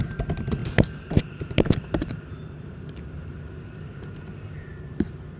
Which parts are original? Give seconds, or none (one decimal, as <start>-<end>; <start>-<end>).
0.0-0.6; 3.8-5.4